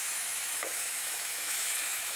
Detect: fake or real fake